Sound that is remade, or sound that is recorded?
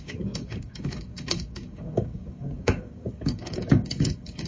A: remade